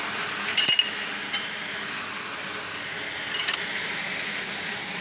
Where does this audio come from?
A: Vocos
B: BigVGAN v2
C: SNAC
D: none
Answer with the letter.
D